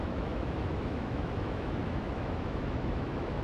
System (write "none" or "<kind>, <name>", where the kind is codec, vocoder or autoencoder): autoencoder, DAC-VAE